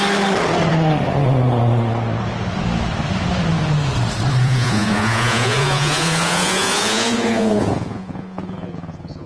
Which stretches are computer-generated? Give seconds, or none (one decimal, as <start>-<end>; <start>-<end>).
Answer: 4.4-9.3